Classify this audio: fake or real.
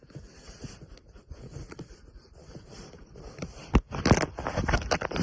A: real